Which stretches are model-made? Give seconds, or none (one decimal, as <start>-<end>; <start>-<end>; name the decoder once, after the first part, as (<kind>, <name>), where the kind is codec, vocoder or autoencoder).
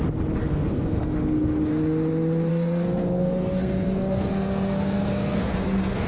0.4-1.7 (codec, SNAC); 2.5-6.1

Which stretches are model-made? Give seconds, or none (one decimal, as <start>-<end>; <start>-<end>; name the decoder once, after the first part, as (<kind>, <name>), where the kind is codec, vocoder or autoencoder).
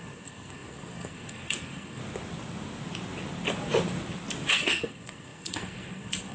0.0-2.0 (codec, SNAC); 4.5-6.3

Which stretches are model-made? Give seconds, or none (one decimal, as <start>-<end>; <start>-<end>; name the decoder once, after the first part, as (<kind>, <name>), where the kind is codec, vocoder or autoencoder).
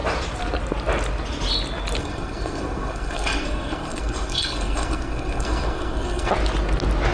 2.0-6.3 (codec, SNAC)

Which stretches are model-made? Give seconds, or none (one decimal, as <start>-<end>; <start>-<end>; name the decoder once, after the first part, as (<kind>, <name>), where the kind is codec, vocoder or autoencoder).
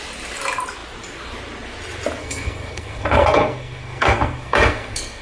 2.2-5.2 (codec, SNAC)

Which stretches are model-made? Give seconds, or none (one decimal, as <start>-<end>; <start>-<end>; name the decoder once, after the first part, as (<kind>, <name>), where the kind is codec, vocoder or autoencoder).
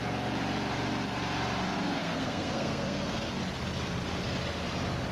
2.0-3.4 (codec, SNAC)